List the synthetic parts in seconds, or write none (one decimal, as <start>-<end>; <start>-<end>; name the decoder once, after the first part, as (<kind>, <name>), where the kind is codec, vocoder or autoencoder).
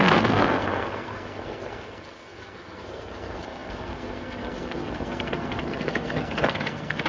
0.0-7.1 (codec, SNAC)